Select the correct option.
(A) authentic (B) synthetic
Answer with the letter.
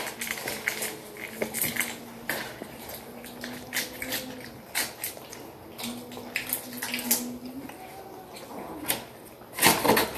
A